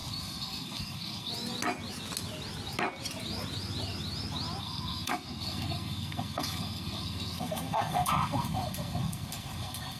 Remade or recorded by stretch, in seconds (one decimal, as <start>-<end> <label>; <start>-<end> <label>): 0.0-1.3 remade; 1.3-4.6 recorded; 4.6-10.0 remade